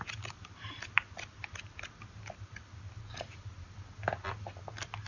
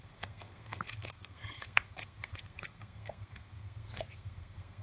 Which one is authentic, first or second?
first